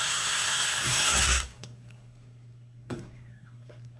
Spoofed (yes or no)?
yes